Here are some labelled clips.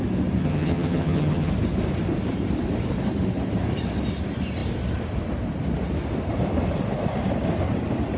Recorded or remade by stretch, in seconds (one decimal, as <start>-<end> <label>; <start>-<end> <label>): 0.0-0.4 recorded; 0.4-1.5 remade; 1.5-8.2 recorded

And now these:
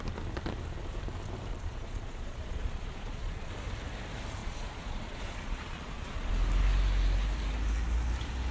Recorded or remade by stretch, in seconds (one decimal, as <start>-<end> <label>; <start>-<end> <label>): 0.0-1.5 recorded; 1.5-3.5 remade; 3.5-4.4 recorded; 4.4-6.3 remade; 6.3-8.5 recorded

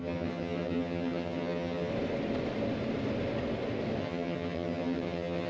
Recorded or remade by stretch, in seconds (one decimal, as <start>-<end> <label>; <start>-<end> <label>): 0.0-1.9 remade; 1.9-4.0 recorded; 4.0-5.5 remade

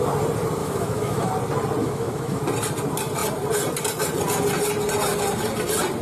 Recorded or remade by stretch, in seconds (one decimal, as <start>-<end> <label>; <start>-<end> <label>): 0.0-0.6 recorded; 0.6-1.3 remade; 1.3-1.8 recorded; 1.8-2.4 remade; 2.4-6.0 recorded

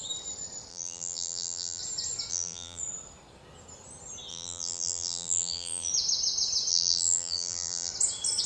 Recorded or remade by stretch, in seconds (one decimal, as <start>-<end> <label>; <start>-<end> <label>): 0.0-0.7 recorded; 0.7-1.8 remade; 1.8-2.3 recorded; 2.3-2.8 remade; 2.8-4.3 recorded; 4.3-5.9 remade; 5.9-6.7 recorded; 6.7-7.9 remade; 7.9-8.5 recorded